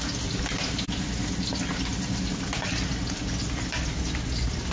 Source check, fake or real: real